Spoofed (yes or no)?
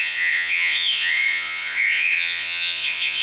yes